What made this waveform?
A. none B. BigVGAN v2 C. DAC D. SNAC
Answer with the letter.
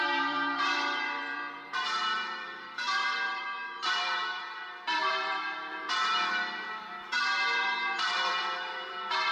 B